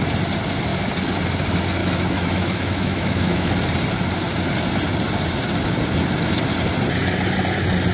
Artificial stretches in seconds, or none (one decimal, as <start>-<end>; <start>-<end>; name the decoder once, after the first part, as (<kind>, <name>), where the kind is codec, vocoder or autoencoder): 1.8-3.5 (autoencoder, DAC-VAE)